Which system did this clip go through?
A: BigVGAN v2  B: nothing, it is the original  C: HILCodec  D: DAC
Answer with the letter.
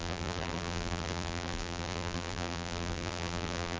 A